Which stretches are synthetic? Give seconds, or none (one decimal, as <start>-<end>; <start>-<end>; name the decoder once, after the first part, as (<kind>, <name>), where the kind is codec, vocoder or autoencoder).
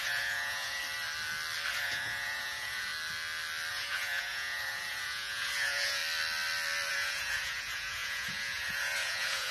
0.0-0.8 (vocoder, Vocos); 1.7-2.9; 3.7-6.0; 6.9-9.5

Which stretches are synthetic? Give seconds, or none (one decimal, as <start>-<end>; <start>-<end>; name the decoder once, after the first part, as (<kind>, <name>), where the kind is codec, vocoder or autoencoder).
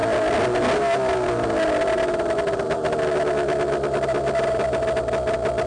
none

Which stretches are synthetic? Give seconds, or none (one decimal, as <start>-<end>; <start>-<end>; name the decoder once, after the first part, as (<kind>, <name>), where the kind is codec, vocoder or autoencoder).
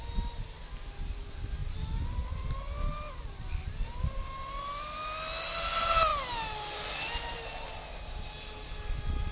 none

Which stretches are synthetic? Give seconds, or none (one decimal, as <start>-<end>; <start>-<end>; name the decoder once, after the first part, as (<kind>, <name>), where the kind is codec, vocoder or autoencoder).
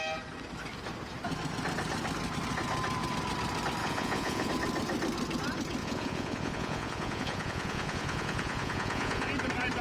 3.8-4.5 (vocoder, Vocos); 5.8-9.3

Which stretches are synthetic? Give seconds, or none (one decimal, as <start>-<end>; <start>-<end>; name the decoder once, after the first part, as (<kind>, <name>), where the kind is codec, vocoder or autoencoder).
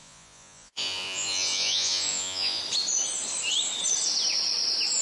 0.0-2.6 (vocoder, Vocos)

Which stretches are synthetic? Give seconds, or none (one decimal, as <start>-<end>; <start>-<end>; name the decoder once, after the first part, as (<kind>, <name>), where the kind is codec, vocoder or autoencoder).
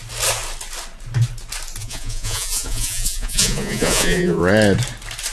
1.8-4.4 (vocoder, Vocos)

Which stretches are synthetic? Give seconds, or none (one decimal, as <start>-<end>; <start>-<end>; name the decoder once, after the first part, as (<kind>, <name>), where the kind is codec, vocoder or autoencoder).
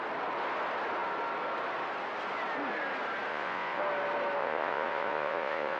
3.3-3.8 (vocoder, Vocos); 4.4-5.8